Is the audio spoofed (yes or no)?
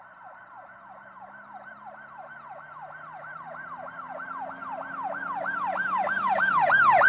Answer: yes